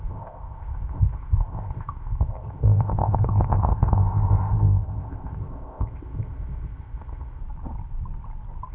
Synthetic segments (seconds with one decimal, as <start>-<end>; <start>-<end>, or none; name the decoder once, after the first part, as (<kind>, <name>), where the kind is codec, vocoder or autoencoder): 0.0-7.4 (codec, ZipCodec)